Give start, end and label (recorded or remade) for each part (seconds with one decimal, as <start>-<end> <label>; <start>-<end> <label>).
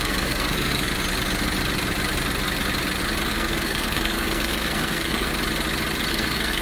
0.0-0.9 remade; 0.9-3.3 recorded; 3.3-5.3 remade; 5.3-6.1 recorded; 6.1-6.6 remade